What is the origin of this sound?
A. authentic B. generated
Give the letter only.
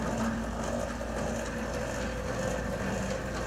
A